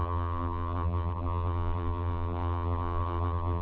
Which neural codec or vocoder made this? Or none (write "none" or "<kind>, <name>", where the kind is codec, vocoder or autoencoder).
vocoder, BigVGAN v2